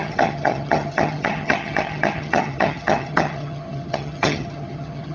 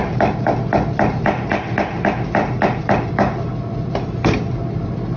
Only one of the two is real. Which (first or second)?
second